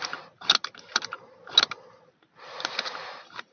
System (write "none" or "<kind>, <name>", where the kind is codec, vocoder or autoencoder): vocoder, BigVGAN v2